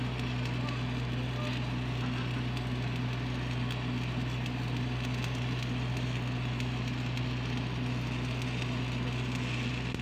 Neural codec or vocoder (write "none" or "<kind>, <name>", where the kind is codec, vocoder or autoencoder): none